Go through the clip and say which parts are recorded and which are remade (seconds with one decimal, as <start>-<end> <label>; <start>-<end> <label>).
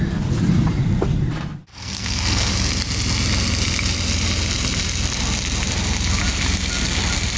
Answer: 0.0-1.7 recorded; 1.7-2.5 remade; 2.5-7.4 recorded